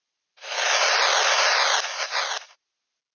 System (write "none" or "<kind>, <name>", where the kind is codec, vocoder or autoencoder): none